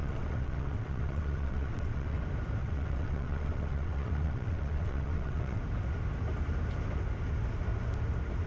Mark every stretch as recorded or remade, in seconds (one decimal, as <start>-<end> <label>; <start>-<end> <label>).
0.0-2.2 remade; 2.2-2.6 recorded; 2.6-5.6 remade; 5.6-8.5 recorded